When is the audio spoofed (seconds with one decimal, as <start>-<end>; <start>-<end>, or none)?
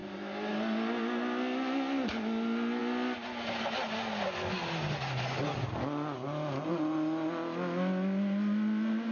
none